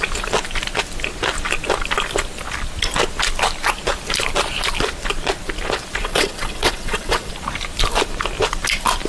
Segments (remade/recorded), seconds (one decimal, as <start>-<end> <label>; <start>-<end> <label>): 0.0-6.0 recorded; 6.0-7.3 remade; 7.3-9.1 recorded